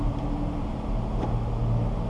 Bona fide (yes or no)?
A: yes